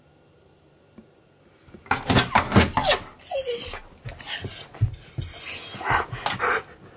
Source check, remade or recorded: recorded